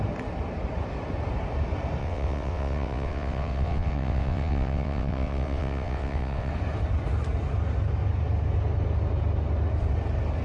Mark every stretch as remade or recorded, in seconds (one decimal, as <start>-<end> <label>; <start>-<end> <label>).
0.0-2.0 recorded; 2.0-6.5 remade; 6.5-10.4 recorded